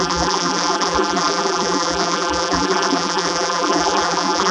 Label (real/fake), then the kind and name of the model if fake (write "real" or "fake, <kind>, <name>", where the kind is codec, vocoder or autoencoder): fake, vocoder, BigVGAN v2